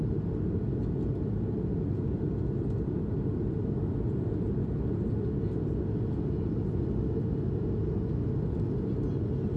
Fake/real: real